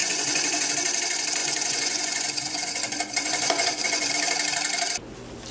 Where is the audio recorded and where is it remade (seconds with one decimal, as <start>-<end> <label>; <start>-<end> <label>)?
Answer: 0.0-0.7 remade; 0.7-1.4 recorded; 1.4-4.1 remade; 4.1-5.5 recorded